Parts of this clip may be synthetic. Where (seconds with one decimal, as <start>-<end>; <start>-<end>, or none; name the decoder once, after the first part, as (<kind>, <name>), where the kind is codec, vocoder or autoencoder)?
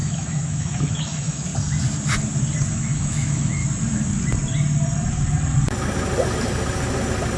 0.0-1.5 (autoencoder, DAC-VAE); 2.7-3.6